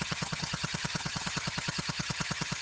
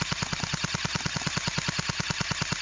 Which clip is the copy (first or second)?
first